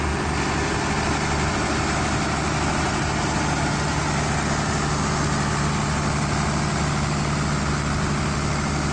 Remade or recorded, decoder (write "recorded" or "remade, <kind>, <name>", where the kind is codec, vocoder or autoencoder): recorded